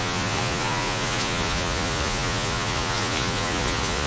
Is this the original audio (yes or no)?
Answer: no